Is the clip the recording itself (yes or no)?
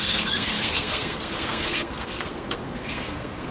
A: no